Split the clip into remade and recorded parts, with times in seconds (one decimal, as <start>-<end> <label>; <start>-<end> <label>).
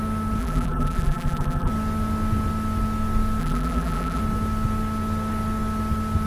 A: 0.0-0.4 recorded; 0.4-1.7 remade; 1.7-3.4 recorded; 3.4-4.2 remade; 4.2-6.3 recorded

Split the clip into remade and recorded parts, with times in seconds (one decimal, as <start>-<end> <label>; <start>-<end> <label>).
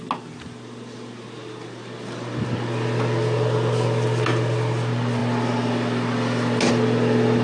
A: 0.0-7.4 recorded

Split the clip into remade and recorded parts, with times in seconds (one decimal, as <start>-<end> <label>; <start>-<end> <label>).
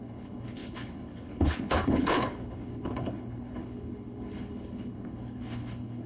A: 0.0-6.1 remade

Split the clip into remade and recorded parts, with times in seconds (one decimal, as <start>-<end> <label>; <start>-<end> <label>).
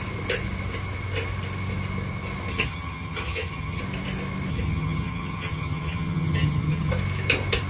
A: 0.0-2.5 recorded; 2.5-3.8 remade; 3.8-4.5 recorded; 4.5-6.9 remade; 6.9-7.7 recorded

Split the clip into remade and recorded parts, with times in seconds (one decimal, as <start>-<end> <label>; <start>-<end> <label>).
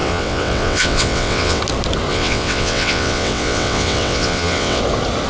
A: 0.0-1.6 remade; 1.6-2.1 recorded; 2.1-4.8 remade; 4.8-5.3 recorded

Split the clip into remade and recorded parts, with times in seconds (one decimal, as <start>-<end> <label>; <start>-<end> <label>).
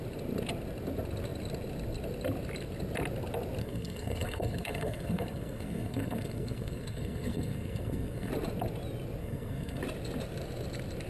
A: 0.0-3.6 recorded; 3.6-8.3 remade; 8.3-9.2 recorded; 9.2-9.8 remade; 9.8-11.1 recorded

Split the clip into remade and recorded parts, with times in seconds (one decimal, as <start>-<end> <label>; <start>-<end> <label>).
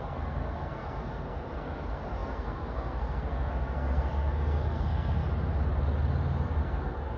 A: 0.0-5.2 remade; 5.2-6.6 recorded; 6.6-7.2 remade